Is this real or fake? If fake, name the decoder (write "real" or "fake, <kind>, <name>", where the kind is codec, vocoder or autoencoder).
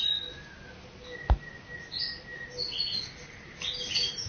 real